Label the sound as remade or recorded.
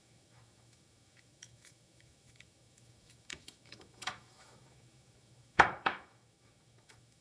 remade